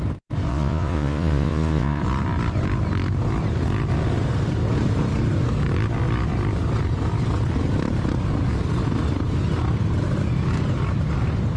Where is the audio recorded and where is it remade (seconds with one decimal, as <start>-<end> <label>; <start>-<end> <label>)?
0.0-0.5 recorded; 0.5-2.0 remade; 2.0-11.6 recorded